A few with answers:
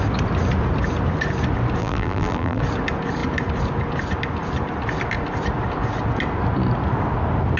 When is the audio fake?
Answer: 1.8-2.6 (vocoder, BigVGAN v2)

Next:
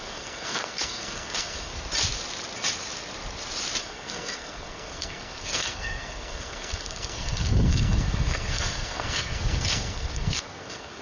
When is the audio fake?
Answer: 0.0-1.7 (codec, SNAC); 3.8-11.0

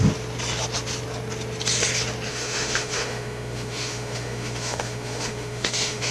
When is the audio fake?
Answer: 2.3-6.1 (autoencoder, DAC-VAE)

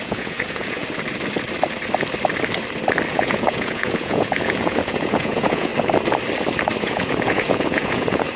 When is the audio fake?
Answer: 0.0-0.8 (vocoder, Vocos); 3.1-5.7; 6.8-8.4

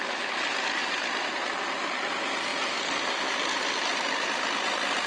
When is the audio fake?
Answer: none